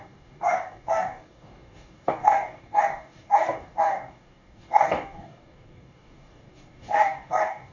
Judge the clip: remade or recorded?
remade